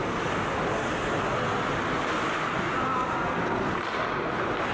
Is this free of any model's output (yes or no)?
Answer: yes